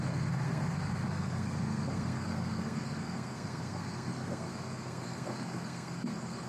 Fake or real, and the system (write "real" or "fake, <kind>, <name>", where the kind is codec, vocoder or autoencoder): fake, codec, SNAC